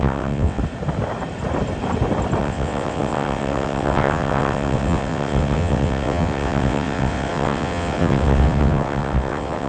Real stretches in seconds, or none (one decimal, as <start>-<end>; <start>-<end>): 0.6-2.4